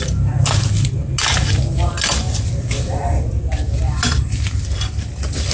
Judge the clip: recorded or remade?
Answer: recorded